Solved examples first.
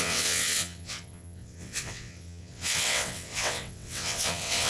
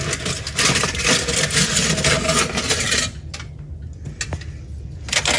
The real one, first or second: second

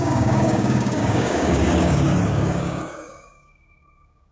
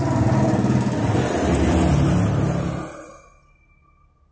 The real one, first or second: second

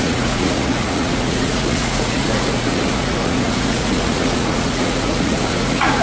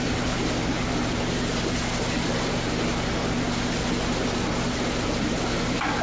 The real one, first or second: second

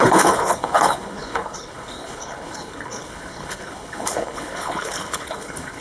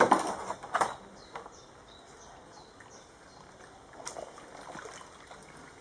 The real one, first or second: second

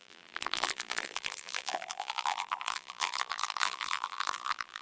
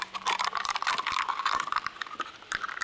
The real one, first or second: second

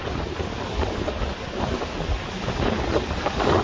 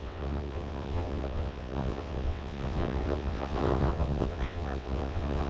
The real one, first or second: first